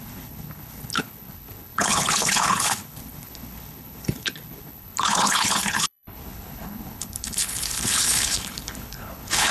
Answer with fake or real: fake